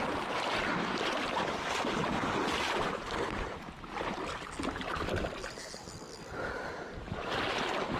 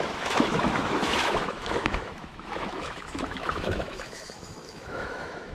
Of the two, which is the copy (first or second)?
second